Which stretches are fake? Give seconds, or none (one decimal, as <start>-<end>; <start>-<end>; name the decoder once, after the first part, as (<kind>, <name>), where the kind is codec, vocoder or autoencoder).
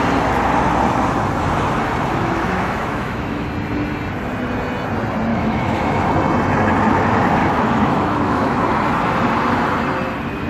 2.1-3.5 (autoencoder, DAC-VAE); 5.3-6.1; 7.4-8.6